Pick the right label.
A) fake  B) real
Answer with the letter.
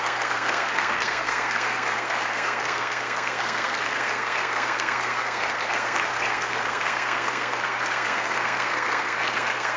A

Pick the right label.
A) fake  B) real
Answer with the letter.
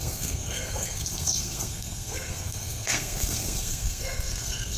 A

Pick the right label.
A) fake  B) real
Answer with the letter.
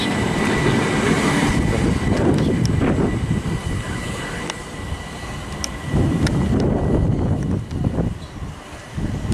B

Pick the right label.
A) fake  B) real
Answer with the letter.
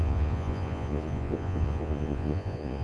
A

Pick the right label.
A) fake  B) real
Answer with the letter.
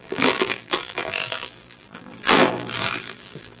A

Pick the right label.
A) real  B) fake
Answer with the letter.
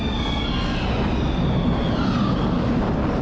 A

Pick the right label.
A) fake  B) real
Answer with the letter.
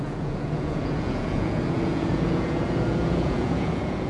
A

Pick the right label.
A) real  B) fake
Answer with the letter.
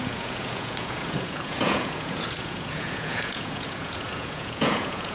B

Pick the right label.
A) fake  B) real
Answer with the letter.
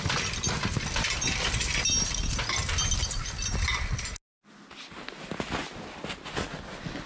B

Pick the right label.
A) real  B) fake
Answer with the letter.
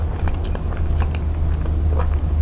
A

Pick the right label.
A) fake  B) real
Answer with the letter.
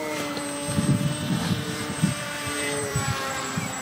A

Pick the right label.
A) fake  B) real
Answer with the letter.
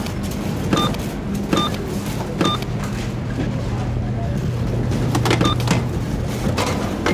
B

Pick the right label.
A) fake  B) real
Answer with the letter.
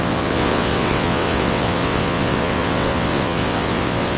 A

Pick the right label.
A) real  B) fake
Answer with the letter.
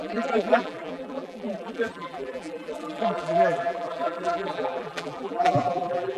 B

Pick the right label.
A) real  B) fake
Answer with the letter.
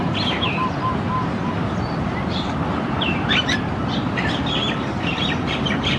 B